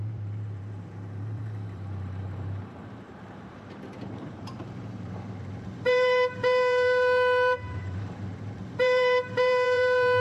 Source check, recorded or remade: remade